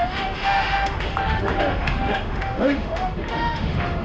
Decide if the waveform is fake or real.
fake